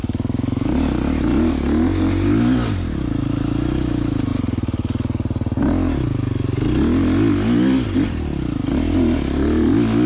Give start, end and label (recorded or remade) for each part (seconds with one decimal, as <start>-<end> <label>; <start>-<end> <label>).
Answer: 0.0-10.1 recorded